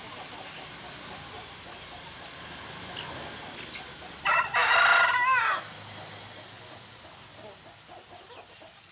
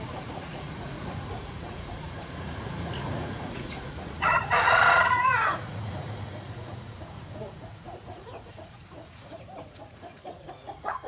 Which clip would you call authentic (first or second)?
first